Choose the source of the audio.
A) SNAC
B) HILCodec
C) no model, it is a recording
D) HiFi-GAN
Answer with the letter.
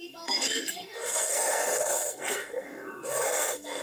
A